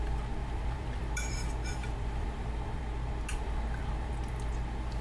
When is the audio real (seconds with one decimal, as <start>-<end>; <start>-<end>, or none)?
0.0-0.4; 2.8-3.3; 4.1-5.0